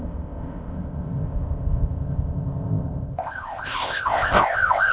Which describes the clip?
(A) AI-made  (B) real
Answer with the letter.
A